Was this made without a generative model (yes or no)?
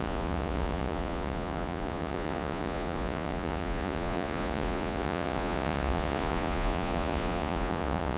no